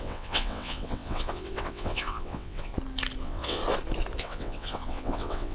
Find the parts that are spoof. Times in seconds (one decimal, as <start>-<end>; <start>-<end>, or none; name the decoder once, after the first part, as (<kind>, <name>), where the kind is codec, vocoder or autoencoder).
0.0-2.7 (vocoder, WaveNeXt); 3.2-3.6; 4.2-5.5